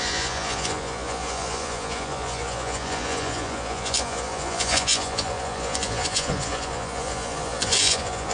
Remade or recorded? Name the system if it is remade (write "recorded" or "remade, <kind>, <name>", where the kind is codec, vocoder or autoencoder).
remade, vocoder, Vocos